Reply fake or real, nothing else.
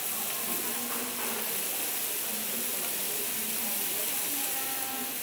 real